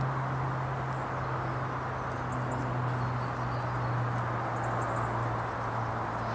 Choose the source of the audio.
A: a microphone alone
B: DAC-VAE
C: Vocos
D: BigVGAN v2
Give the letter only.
A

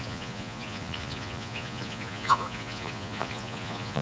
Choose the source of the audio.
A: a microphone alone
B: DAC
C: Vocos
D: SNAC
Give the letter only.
C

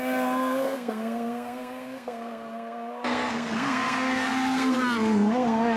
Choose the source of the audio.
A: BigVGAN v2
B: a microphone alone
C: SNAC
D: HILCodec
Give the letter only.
C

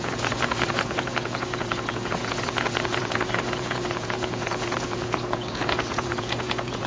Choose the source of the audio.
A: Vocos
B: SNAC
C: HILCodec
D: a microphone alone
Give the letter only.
A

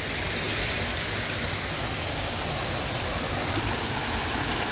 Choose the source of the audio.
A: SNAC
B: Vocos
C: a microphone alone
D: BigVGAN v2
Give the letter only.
C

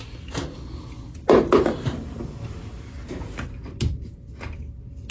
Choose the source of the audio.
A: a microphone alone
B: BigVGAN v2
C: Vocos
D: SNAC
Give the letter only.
A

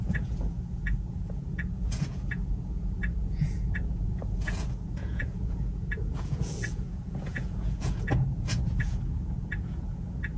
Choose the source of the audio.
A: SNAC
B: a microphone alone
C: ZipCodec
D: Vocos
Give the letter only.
D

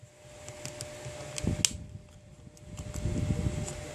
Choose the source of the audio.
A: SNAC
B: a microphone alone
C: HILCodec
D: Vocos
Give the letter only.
B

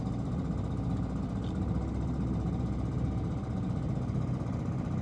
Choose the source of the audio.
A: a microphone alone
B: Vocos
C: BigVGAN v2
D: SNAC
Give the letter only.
A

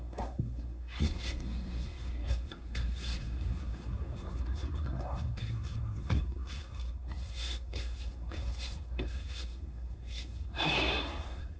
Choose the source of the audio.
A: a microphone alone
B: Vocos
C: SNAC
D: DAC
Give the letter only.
C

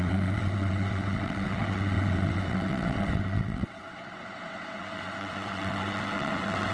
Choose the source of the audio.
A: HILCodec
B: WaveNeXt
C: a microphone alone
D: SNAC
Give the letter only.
B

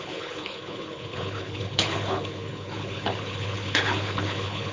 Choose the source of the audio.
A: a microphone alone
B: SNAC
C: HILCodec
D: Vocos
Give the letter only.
C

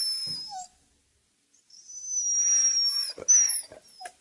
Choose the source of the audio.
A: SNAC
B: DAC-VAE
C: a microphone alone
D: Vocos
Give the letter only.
C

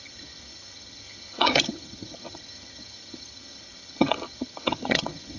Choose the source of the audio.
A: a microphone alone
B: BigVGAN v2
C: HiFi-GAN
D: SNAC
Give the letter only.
C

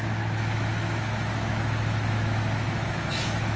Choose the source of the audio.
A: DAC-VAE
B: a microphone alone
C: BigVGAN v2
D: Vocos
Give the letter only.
A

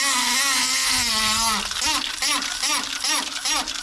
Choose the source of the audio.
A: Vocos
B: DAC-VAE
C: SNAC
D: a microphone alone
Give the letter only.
D